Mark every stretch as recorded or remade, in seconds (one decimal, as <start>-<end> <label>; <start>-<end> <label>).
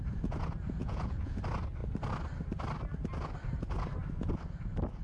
0.0-0.8 recorded; 0.8-1.4 remade; 1.4-5.0 recorded